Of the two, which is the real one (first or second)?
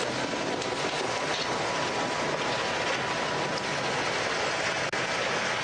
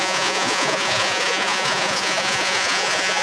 first